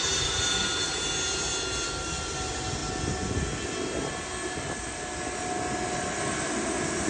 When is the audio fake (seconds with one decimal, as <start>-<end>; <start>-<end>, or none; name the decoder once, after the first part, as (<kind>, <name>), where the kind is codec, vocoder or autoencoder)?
none

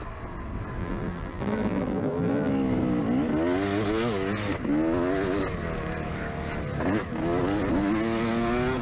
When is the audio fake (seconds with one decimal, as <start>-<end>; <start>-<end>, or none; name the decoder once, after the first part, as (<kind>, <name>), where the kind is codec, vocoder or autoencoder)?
0.8-2.5 (vocoder, BigVGAN v2)

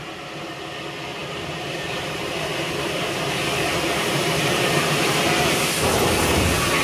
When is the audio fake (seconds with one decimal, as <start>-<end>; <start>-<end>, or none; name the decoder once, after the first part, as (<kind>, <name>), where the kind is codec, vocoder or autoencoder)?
1.2-5.3 (vocoder, BigVGAN v2)

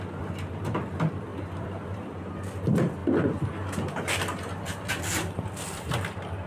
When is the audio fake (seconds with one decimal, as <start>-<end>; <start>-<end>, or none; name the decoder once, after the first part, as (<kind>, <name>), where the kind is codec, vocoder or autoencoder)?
0.0-3.0 (vocoder, BigVGAN v2); 5.6-6.5